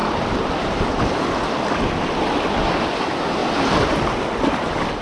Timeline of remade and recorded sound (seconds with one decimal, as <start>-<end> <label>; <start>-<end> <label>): 0.0-5.0 recorded